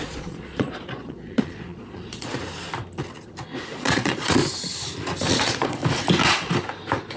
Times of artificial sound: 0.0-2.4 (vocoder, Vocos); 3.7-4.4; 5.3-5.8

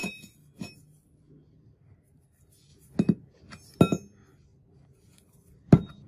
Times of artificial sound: 0.0-0.6 (vocoder, BigVGAN v2)

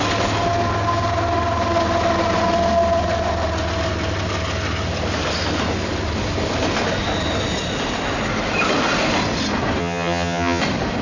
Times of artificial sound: 9.8-10.6 (vocoder, HiFi-GAN)

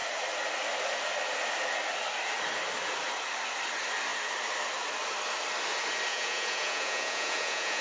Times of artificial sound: 6.1-7.8 (vocoder, Vocos)

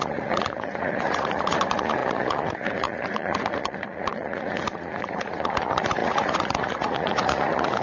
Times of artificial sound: 0.0-7.8 (vocoder, Vocos)

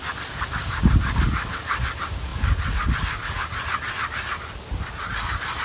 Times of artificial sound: none